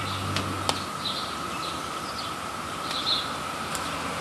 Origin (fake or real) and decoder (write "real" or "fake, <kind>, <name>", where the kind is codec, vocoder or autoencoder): real